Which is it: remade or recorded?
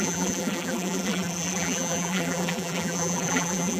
remade